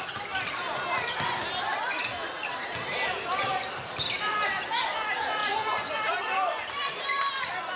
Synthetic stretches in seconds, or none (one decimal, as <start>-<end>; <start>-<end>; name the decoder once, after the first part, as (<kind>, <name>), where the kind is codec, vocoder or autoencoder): none

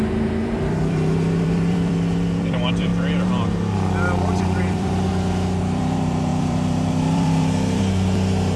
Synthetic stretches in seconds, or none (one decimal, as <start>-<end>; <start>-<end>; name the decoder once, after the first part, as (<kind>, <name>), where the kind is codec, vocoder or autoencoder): 0.0-2.9 (vocoder, BigVGAN v2); 4.4-5.1; 5.6-8.6